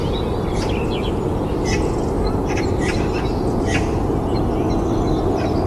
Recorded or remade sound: recorded